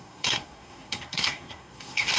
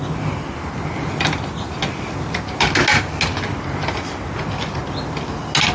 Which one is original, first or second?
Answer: second